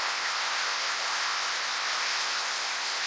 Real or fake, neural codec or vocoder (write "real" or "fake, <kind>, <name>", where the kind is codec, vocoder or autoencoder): fake, codec, ZipCodec